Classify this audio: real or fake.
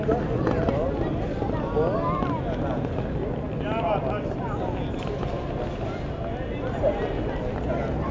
real